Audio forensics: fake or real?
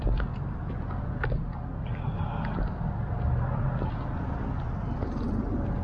real